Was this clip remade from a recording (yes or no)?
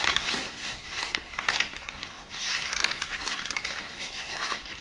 yes